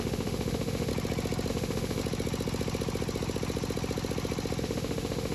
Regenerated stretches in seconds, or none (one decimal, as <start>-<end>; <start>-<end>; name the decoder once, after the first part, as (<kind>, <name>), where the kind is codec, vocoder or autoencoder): 0.0-0.9 (autoencoder, DAC-VAE); 1.5-2.0; 4.6-5.3